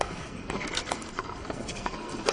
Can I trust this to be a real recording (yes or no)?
no